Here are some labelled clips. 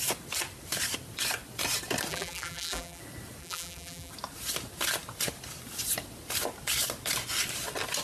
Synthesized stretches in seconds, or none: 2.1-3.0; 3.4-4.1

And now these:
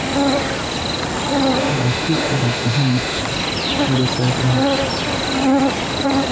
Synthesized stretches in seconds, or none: 1.6-3.2

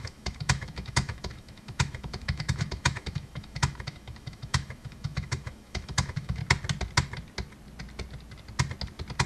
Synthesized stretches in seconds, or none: 0.0-6.4

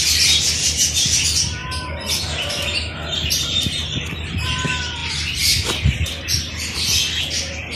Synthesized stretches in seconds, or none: none

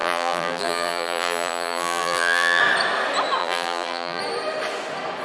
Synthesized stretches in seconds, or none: 0.0-2.6; 3.4-4.2

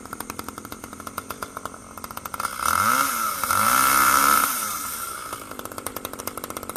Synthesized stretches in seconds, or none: 0.0-1.8; 3.1-6.8

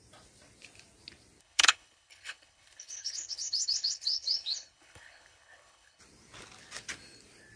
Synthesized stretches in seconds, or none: 1.4-6.0